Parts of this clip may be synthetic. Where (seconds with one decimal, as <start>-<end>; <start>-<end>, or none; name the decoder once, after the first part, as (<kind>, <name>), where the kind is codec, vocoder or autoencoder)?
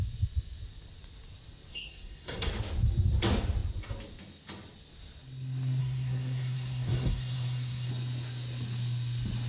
1.7-2.5 (codec, SNAC); 5.8-7.9